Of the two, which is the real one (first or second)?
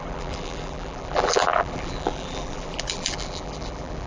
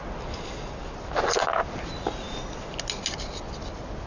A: second